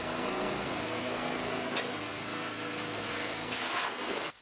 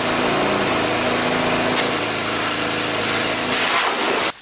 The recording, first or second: second